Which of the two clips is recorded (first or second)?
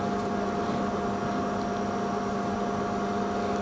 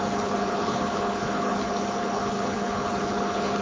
first